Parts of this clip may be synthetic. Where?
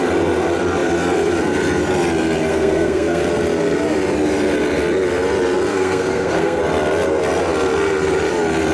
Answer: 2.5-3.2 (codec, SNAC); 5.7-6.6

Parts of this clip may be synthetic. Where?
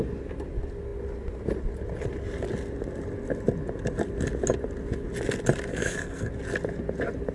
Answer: 5.7-6.3 (codec, SNAC)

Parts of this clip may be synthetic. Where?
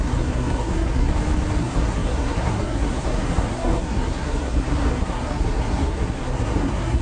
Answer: 0.0-1.1 (codec, SNAC); 1.6-7.0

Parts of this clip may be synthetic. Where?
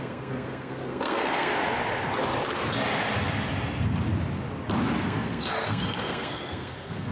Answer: 0.0-1.5 (codec, SNAC); 5.0-7.1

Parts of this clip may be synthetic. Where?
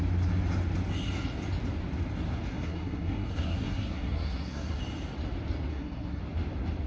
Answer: 2.5-4.8 (codec, SNAC); 5.7-6.2